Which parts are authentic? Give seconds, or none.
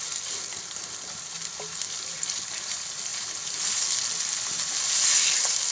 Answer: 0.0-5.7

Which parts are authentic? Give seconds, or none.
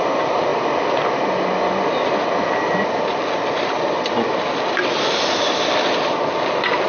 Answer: 0.0-6.9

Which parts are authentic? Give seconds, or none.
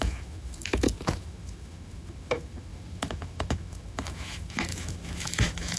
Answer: none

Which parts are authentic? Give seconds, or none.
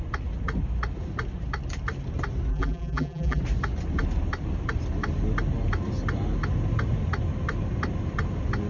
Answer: 0.0-2.5; 3.4-8.7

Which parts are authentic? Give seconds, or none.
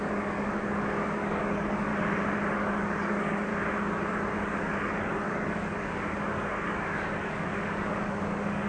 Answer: 1.9-2.5; 3.5-4.3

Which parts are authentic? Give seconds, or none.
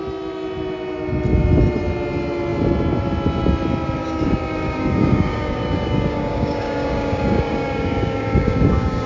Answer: 0.0-4.0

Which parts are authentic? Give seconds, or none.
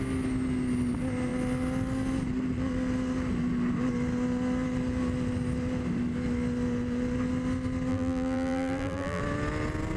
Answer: 0.0-7.9; 9.2-10.0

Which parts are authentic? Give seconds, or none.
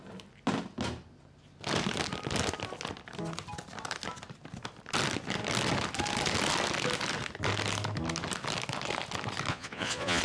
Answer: 0.0-9.5